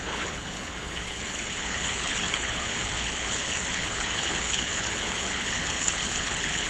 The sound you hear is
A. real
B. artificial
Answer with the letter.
B